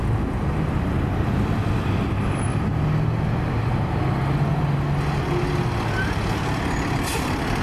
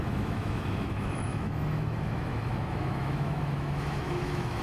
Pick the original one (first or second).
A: first